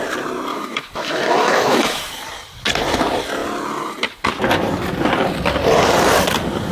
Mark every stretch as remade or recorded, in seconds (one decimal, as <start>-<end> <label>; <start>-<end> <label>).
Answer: 0.0-0.5 recorded; 0.5-2.1 remade; 2.1-6.7 recorded